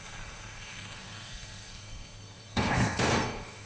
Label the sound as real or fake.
fake